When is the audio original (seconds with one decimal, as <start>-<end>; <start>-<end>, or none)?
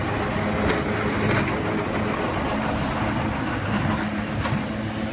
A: 0.0-5.1